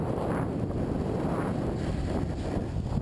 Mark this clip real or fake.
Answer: real